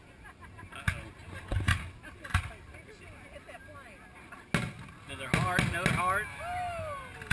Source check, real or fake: real